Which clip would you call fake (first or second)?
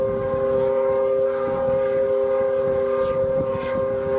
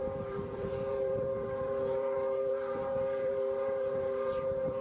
second